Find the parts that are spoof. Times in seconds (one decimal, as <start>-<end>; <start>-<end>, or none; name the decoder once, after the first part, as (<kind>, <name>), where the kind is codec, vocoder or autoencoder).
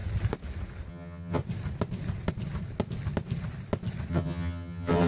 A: 0.9-1.4 (vocoder, HiFi-GAN); 4.1-5.1